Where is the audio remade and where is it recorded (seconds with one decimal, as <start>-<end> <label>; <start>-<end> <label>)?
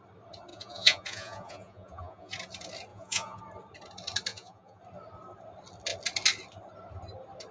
0.0-0.5 recorded; 0.5-2.3 remade; 2.3-2.9 recorded; 2.9-3.4 remade; 3.4-4.3 recorded; 4.3-4.8 remade; 4.8-7.5 recorded